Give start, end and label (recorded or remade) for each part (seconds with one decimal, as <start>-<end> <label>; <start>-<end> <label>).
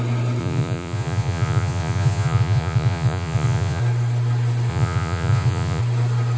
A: 0.0-0.4 recorded; 0.4-3.8 remade; 3.8-4.7 recorded; 4.7-5.8 remade; 5.8-6.4 recorded